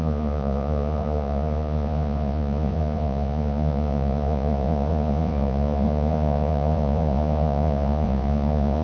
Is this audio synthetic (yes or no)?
yes